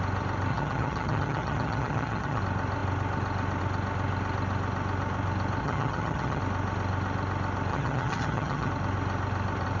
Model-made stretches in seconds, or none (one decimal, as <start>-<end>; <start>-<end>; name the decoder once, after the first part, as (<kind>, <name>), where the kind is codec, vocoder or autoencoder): 0.5-2.4 (vocoder, HiFi-GAN); 5.6-6.4; 7.7-8.7